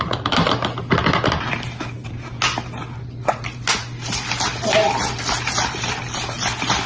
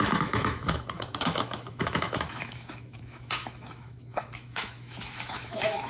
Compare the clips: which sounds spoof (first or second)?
second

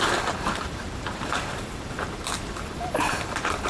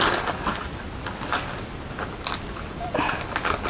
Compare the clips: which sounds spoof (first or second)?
first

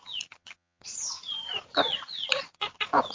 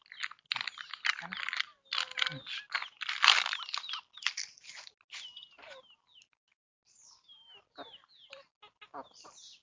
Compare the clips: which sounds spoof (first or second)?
first